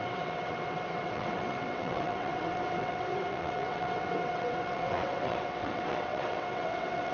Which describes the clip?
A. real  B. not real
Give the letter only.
B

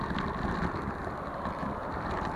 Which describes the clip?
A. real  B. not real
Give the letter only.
A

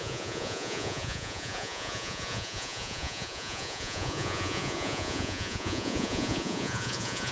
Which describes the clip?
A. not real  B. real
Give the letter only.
A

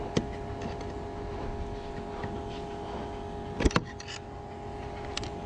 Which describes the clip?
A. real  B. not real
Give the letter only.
A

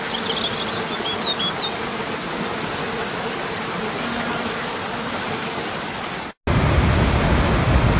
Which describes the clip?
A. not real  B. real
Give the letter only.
B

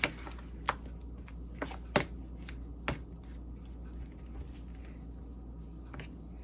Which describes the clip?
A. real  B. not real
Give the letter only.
A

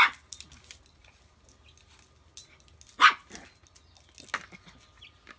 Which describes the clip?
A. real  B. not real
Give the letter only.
A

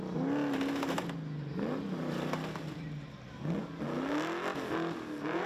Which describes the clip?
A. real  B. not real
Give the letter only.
A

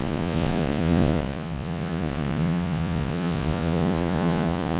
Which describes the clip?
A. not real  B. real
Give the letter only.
A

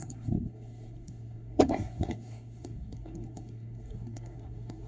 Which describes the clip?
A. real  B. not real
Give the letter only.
B